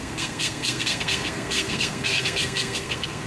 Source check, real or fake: fake